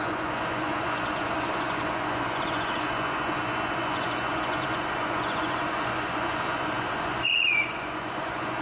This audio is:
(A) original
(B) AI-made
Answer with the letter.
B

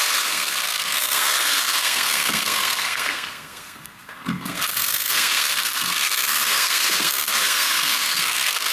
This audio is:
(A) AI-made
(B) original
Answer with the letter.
A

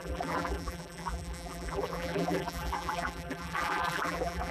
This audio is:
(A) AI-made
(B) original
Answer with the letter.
A